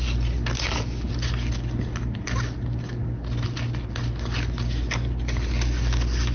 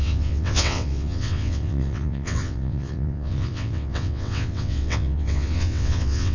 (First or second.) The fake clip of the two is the second